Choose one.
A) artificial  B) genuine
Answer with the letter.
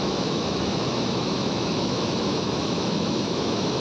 A